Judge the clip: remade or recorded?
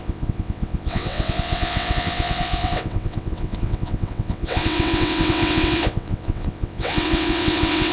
remade